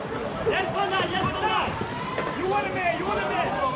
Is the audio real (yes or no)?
no